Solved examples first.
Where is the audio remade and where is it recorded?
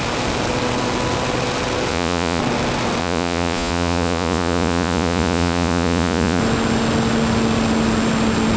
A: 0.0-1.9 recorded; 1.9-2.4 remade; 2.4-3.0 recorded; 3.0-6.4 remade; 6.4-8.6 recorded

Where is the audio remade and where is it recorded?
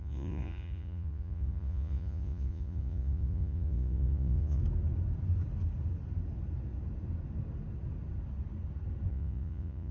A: 0.0-4.6 remade; 4.6-9.1 recorded; 9.1-9.9 remade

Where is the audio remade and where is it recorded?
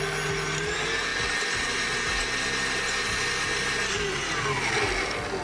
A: 0.0-5.4 recorded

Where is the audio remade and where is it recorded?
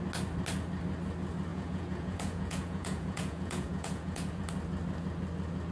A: 0.0-1.5 recorded; 1.5-4.4 remade; 4.4-5.7 recorded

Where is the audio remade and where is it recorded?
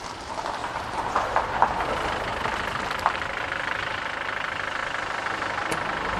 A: 0.0-0.6 remade; 0.6-1.7 recorded; 1.7-4.8 remade; 4.8-6.2 recorded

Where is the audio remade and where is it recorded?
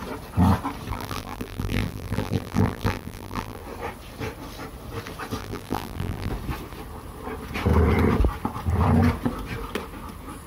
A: 0.0-0.9 recorded; 0.9-3.6 remade; 3.6-5.4 recorded; 5.4-6.3 remade; 6.3-10.5 recorded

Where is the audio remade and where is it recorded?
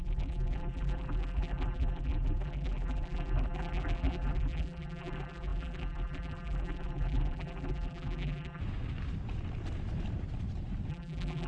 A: 0.0-8.6 remade; 8.6-10.9 recorded; 10.9-11.5 remade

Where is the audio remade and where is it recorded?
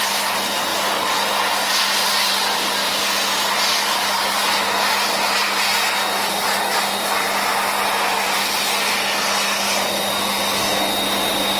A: 0.0-3.7 recorded; 3.7-4.4 remade; 4.4-11.6 recorded